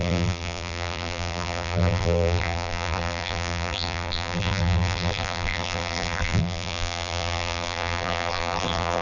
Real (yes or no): no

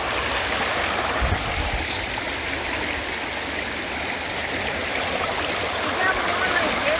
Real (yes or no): yes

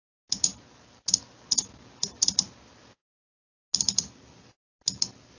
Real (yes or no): yes